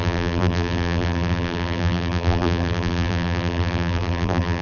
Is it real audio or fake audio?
fake